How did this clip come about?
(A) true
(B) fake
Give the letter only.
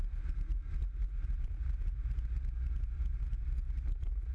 B